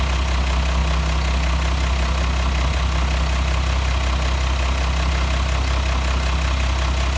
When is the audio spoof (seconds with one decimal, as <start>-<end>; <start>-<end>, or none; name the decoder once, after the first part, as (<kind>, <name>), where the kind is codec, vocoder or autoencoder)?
none